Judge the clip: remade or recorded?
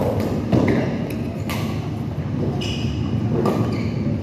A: recorded